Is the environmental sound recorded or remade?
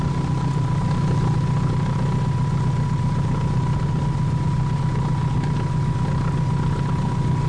recorded